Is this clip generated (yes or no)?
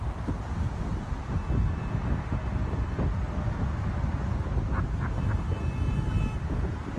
no